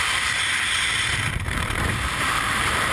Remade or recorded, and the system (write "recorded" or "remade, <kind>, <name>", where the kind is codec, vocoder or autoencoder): remade, vocoder, BigVGAN v2